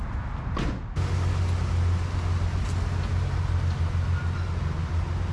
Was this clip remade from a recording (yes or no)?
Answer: no